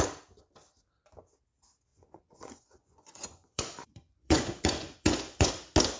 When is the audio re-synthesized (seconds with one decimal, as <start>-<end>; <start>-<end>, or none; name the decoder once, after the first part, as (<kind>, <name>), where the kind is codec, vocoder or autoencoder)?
1.9-5.5 (vocoder, Vocos)